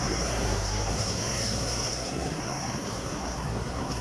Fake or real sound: fake